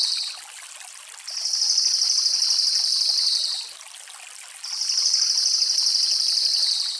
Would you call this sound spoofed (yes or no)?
no